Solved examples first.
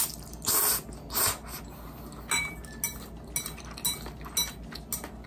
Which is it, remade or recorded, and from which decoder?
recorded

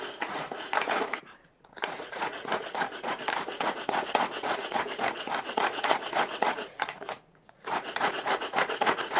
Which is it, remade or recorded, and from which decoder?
remade, vocoder, Vocos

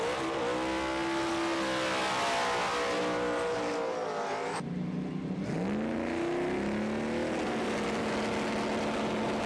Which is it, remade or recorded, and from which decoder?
recorded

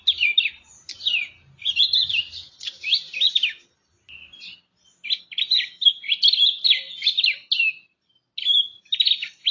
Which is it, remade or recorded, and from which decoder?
recorded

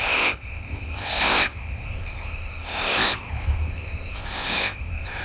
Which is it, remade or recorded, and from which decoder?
remade, codec, ZipCodec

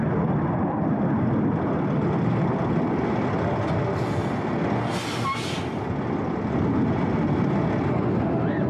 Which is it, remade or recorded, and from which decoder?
recorded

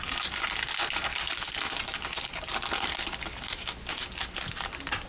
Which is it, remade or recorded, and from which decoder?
recorded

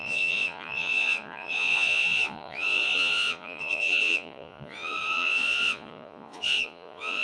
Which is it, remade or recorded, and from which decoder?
remade, vocoder, Vocos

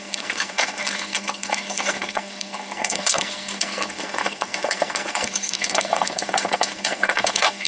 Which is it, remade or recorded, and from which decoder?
remade, codec, SNAC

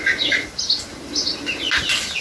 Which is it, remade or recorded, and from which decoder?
recorded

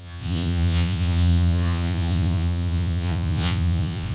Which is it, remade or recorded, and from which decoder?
remade, vocoder, Vocos